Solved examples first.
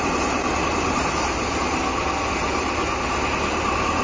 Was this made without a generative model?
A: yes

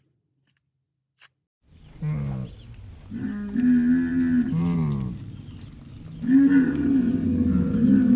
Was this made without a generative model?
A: yes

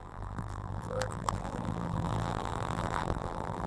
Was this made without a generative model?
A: no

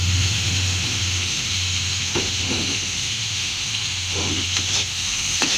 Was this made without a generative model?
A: no